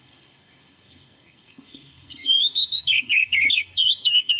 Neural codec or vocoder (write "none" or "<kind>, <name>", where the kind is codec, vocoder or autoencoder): codec, SNAC